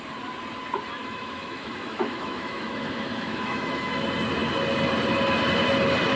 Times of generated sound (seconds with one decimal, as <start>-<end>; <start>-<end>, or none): 1.0-4.0